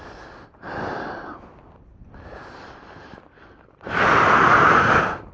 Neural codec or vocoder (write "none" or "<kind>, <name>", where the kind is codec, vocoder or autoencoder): vocoder, BigVGAN v2